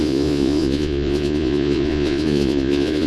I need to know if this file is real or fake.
fake